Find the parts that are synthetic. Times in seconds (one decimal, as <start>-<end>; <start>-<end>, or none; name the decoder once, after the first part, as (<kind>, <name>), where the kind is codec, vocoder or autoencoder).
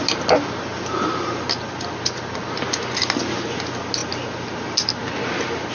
none